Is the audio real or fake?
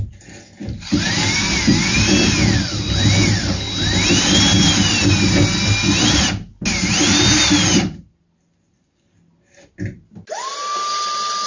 real